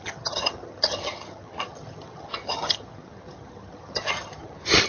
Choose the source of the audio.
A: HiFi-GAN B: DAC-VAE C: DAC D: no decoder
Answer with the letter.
A